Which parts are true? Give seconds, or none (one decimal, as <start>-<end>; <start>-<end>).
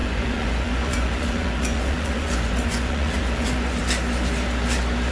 3.8-5.1